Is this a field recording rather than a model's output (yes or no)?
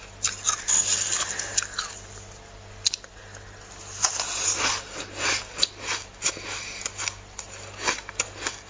yes